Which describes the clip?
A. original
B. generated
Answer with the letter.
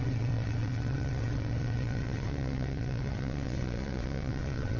B